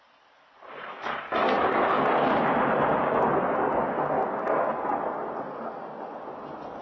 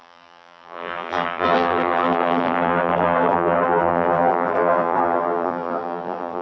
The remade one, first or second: second